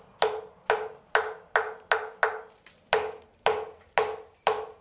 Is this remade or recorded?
recorded